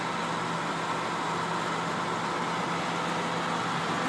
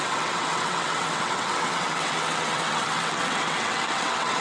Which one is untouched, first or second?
first